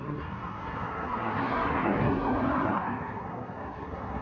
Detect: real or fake fake